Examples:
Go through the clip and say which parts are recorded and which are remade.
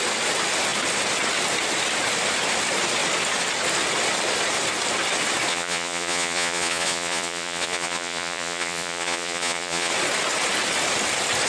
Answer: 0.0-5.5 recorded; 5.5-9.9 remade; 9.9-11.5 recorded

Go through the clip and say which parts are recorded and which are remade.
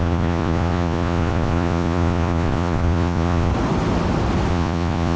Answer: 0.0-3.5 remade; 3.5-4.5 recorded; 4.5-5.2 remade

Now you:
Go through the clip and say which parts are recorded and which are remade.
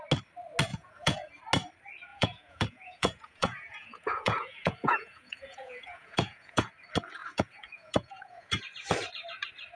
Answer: 0.0-0.7 recorded; 0.7-1.4 remade; 1.4-2.1 recorded; 2.1-6.7 remade; 6.7-7.2 recorded; 7.2-8.6 remade; 8.6-9.8 recorded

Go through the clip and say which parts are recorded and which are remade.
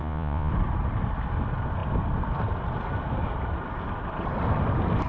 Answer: 0.0-0.5 remade; 0.5-5.1 recorded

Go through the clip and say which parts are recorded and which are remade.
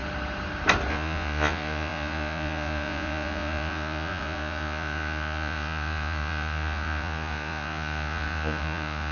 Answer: 0.0-0.9 recorded; 0.9-9.1 remade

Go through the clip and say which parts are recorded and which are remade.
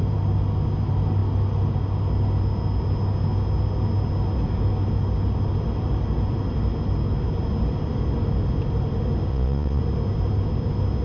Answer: 0.0-9.3 recorded; 9.3-9.8 remade; 9.8-11.0 recorded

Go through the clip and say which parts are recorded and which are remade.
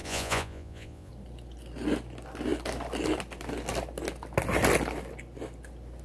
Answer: 0.0-1.1 remade; 1.1-6.0 recorded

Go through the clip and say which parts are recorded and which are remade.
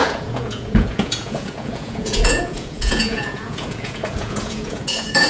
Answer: 0.0-5.3 remade